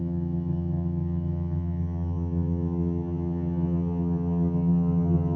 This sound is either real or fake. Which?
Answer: fake